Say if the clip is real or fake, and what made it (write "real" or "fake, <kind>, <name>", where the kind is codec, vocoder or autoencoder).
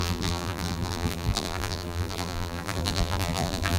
fake, vocoder, BigVGAN v2